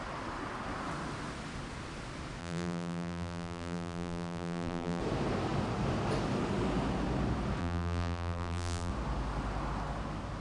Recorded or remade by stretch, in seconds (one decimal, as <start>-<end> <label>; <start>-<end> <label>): 0.0-2.4 recorded; 2.4-5.0 remade; 5.0-7.6 recorded; 7.6-8.9 remade; 8.9-10.4 recorded